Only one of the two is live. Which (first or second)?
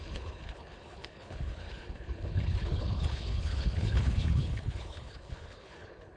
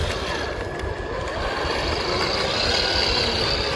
second